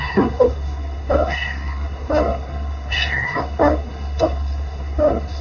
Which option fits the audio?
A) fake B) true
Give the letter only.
A